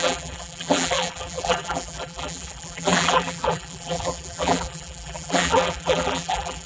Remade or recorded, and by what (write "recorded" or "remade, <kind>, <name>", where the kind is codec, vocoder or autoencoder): remade, vocoder, BigVGAN v2